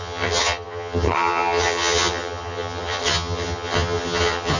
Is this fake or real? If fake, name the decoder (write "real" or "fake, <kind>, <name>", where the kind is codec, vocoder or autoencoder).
fake, vocoder, HiFi-GAN